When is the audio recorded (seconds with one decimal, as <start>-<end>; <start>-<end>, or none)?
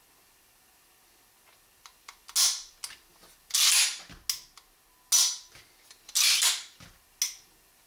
0.0-7.9